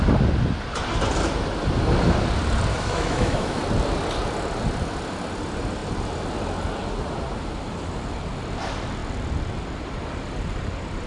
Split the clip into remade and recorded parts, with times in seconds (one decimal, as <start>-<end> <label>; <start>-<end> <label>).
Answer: 0.0-2.7 recorded; 2.7-3.6 remade; 3.6-11.1 recorded